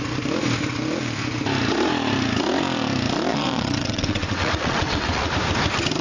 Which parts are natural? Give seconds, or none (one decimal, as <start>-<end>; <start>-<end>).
0.0-3.3; 5.3-6.0